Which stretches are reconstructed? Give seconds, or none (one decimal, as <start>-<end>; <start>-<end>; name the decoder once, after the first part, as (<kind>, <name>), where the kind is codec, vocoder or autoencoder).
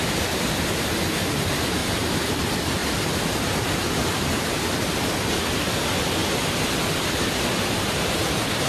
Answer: 1.8-2.4 (vocoder, BigVGAN v2); 2.8-5.1; 6.2-7.6